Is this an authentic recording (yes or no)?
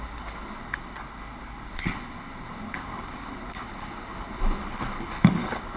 no